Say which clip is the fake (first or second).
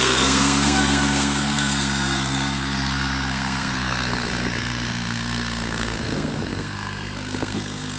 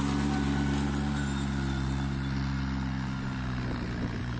first